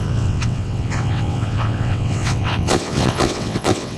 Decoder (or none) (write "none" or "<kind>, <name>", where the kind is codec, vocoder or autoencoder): vocoder, WaveNeXt